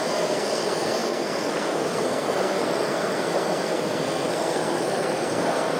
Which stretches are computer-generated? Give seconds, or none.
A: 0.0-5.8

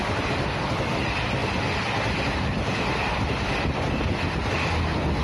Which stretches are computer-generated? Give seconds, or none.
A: none

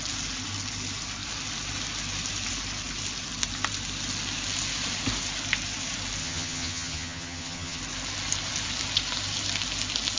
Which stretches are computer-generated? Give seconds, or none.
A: 6.2-7.8

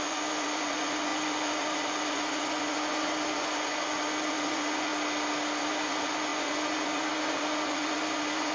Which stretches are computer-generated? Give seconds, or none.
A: 0.0-4.9; 5.6-8.5

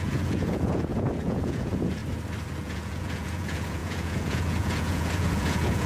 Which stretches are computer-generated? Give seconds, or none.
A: 0.0-2.0; 2.6-5.9

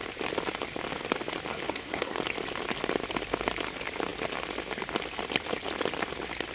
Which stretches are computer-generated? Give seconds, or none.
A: 1.5-2.2